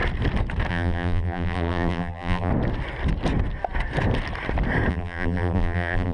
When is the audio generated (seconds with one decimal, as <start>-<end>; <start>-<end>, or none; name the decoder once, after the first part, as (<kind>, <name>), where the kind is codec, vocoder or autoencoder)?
0.7-2.5 (vocoder, BigVGAN v2); 4.9-6.1